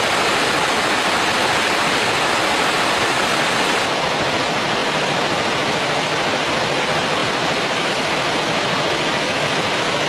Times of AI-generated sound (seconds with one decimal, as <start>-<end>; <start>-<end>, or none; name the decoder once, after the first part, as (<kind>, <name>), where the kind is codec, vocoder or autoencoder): 7.2-7.9 (vocoder, BigVGAN v2)